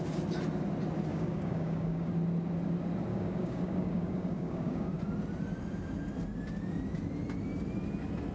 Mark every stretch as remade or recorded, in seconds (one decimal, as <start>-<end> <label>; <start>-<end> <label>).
0.0-1.1 recorded; 1.1-2.1 remade; 2.1-3.1 recorded; 3.1-4.9 remade; 4.9-8.3 recorded